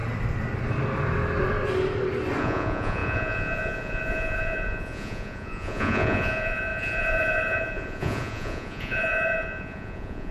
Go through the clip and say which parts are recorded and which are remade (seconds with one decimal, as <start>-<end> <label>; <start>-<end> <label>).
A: 0.0-2.4 recorded; 2.4-10.3 remade